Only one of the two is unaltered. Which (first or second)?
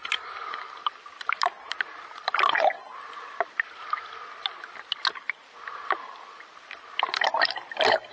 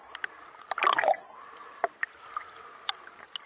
second